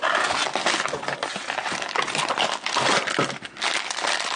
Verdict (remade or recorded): recorded